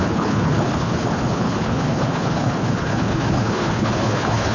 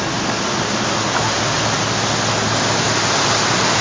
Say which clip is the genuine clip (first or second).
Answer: second